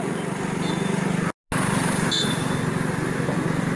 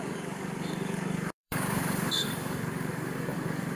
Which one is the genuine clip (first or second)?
first